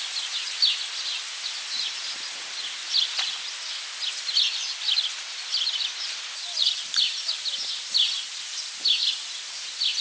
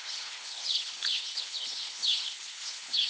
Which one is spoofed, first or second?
second